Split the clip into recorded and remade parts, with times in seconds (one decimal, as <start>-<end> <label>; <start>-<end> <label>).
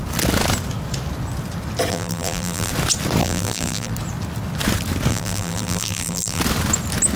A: 0.0-1.9 recorded; 1.9-2.7 remade; 2.7-3.2 recorded; 3.2-3.9 remade; 3.9-5.1 recorded; 5.1-6.4 remade; 6.4-7.2 recorded